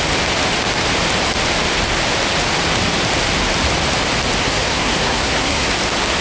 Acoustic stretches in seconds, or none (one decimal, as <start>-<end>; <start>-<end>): 0.0-4.4; 5.7-6.2